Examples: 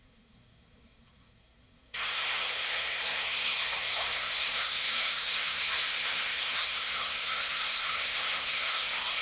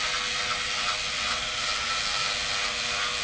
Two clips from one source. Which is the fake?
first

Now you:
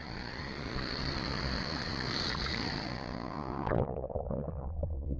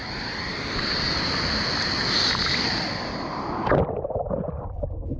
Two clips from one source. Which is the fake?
first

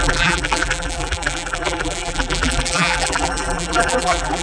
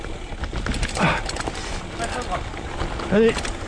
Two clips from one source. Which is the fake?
first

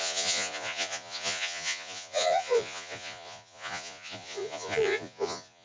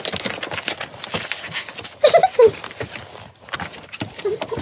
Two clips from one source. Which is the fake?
first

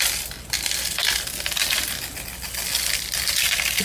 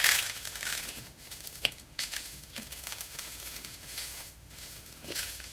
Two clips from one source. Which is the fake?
second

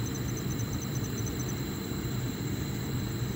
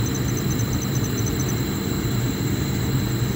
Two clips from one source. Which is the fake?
first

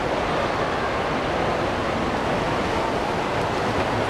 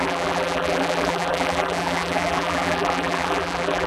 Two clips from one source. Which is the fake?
second